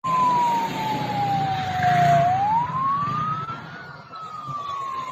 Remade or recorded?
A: recorded